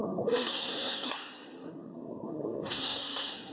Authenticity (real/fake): fake